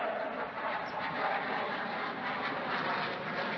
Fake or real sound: real